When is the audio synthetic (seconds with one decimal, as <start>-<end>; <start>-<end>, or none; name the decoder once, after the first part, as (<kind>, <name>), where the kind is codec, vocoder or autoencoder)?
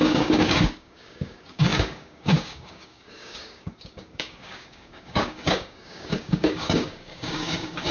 0.0-7.9 (codec, DAC)